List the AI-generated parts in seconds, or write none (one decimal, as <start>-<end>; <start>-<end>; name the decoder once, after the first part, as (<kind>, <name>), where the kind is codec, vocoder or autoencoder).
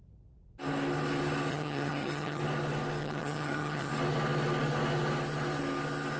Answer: 1.5-2.4 (vocoder, HiFi-GAN); 3.0-3.9